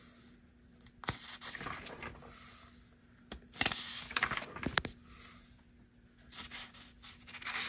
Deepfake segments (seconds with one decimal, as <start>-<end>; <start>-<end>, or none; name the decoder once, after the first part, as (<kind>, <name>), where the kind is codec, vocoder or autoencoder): 3.9-4.6 (codec, DAC)